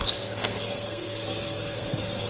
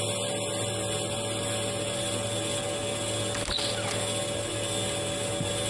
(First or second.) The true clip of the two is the second